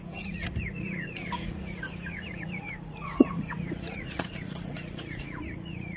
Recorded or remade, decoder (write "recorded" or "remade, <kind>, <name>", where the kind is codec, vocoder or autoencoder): remade, vocoder, Vocos